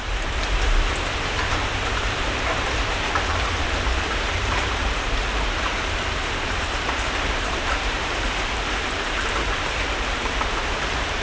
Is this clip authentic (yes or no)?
no